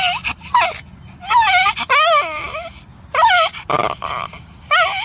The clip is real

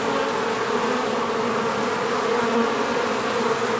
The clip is real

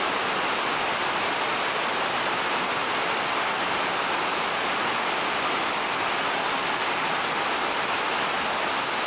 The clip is real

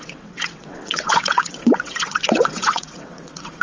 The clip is fake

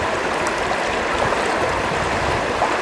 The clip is real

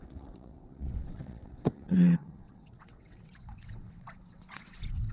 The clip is fake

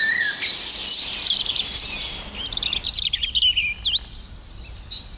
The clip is real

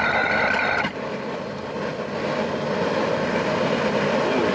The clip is real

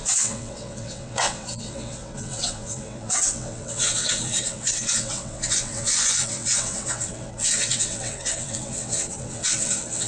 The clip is fake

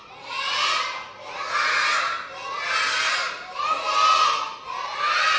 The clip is real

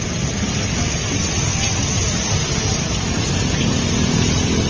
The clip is real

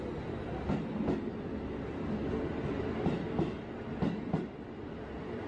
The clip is real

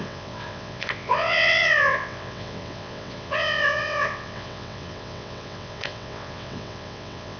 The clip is fake